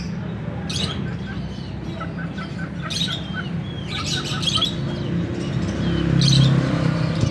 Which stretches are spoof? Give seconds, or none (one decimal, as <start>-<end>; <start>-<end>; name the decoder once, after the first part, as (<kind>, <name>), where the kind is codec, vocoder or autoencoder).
none